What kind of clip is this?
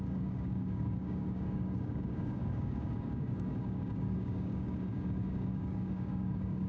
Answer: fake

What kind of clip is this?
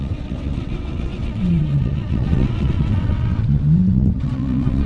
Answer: fake